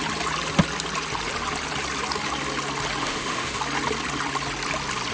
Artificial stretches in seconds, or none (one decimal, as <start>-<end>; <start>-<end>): 3.0-3.6